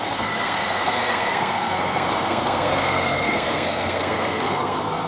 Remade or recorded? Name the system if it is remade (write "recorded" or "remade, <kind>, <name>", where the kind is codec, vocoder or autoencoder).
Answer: remade, codec, SNAC